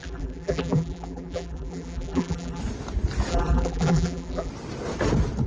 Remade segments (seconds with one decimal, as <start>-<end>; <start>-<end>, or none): 0.0-2.6; 3.3-4.5